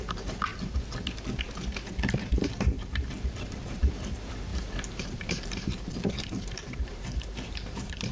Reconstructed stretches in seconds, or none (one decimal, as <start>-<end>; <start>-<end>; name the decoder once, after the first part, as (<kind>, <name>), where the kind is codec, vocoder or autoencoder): 0.0-0.5 (vocoder, BigVGAN v2); 2.3-8.1